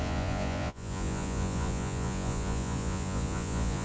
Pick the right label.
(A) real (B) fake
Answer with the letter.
B